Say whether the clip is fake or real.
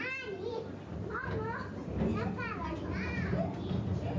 real